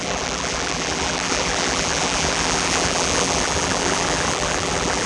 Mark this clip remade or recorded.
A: remade